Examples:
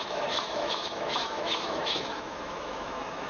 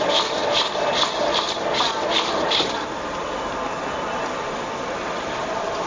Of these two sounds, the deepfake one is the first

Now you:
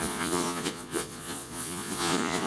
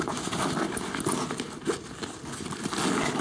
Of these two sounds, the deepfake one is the first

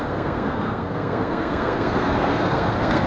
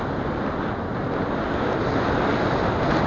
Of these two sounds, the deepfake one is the first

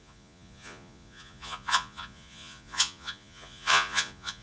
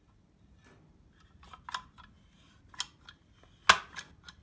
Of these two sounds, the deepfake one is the first